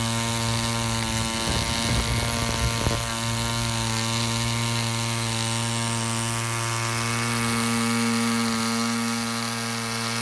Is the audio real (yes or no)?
yes